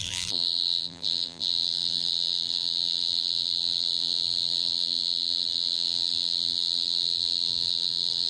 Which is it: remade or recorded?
remade